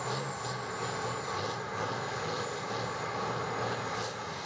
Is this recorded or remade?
recorded